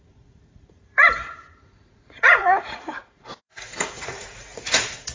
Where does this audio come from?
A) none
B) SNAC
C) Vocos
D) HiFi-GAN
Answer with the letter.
C